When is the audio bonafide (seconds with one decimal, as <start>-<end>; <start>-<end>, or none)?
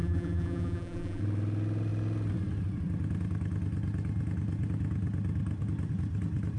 1.2-6.6